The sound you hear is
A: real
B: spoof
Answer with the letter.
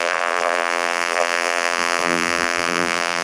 B